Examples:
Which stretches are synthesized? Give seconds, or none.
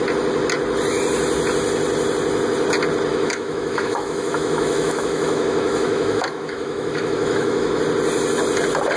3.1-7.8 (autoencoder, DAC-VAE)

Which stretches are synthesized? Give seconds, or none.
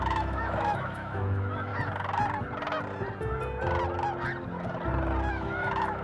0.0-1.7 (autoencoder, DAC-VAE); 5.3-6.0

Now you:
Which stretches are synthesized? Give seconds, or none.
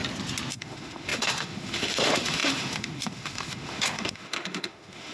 0.5-5.1 (autoencoder, DAC-VAE)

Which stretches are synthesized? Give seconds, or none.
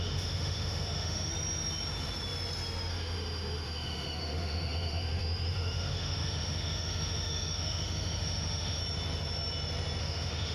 0.0-1.3 (autoencoder, DAC-VAE); 2.9-8.8; 10.0-10.5